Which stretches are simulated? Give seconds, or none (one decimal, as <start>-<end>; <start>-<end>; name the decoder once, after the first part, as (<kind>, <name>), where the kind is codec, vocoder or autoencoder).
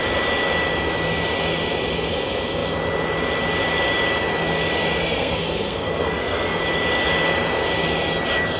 5.0-6.6 (codec, SNAC)